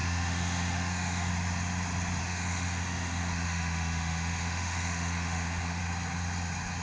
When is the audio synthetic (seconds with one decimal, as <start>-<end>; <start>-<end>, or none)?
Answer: 0.0-1.3; 2.2-5.8